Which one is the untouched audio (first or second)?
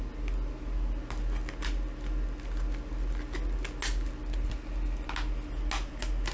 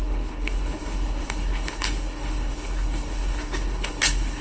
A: first